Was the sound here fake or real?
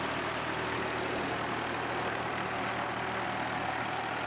real